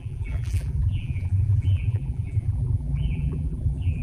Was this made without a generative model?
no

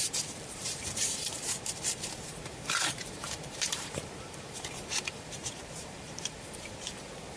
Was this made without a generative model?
no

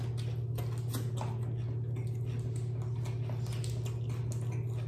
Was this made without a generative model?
yes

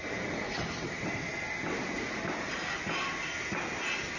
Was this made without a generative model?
yes